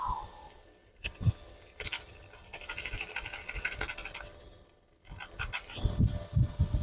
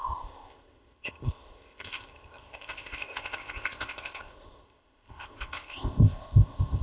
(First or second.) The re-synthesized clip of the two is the second